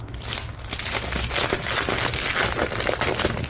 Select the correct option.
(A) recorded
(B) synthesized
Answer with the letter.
A